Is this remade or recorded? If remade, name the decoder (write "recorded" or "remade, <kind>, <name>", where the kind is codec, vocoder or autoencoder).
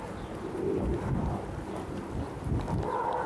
recorded